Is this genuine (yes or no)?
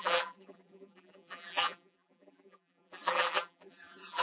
no